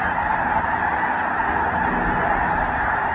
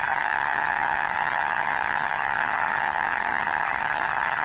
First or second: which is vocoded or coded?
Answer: second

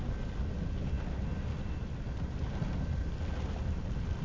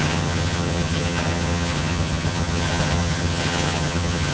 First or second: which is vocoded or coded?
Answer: second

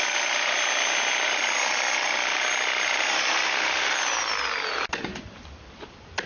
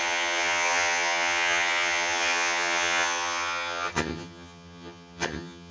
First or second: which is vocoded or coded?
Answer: second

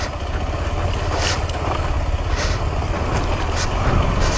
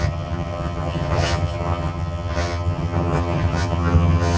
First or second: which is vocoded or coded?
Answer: second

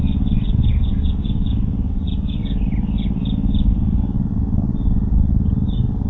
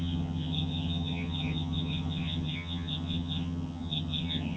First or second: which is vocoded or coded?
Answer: second